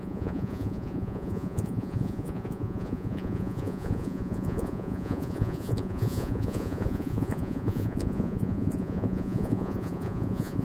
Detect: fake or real fake